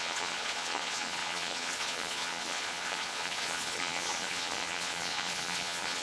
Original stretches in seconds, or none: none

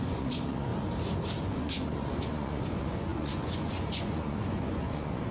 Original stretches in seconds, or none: 0.7-1.5

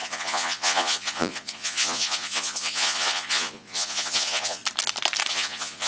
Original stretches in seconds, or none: 4.6-5.3